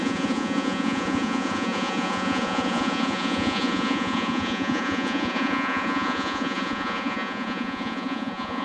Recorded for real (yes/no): no